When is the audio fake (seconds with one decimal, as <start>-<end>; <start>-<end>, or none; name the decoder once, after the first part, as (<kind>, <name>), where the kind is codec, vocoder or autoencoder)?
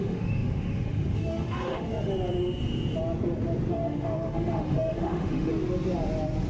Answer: 0.0-2.1 (autoencoder, DAC-VAE); 3.7-5.5